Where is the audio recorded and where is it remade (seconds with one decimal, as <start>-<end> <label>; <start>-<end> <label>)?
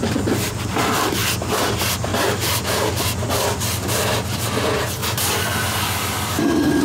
0.0-1.2 remade; 1.2-1.7 recorded; 1.7-5.0 remade; 5.0-6.8 recorded